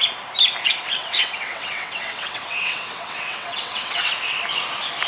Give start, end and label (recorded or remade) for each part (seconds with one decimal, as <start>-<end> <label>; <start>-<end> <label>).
0.0-1.0 recorded; 1.0-4.1 remade; 4.1-5.1 recorded